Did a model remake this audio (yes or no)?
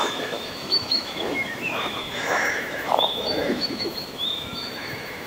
yes